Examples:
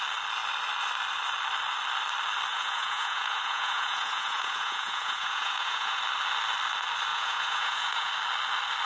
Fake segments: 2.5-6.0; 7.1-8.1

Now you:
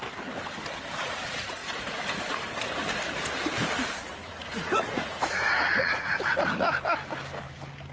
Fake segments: 1.6-2.4; 4.2-6.7

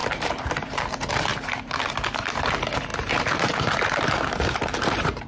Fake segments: 0.0-0.9; 1.3-1.9; 2.9-5.3

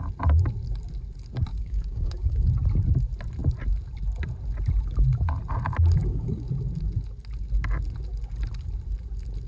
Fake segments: 1.5-2.5; 6.0-6.5

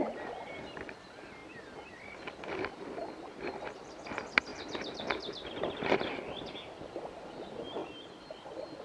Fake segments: none

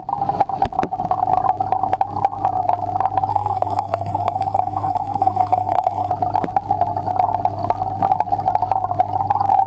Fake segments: 3.3-6.1